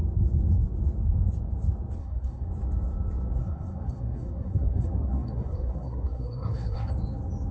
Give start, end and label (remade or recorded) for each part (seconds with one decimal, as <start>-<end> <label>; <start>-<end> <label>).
0.0-2.0 recorded; 2.0-2.5 remade; 2.5-3.4 recorded; 3.4-6.9 remade; 6.9-7.5 recorded